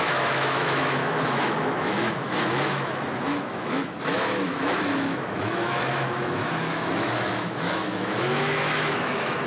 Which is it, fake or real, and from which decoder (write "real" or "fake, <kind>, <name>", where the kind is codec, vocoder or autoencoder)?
fake, autoencoder, DAC-VAE